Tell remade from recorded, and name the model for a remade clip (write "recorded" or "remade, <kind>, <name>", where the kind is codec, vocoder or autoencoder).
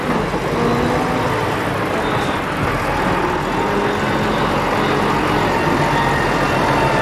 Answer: recorded